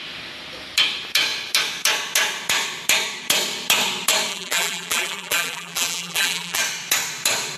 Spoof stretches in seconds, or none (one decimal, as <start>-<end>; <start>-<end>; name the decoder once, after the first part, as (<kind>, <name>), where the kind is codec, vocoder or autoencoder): 4.3-6.6 (vocoder, BigVGAN v2)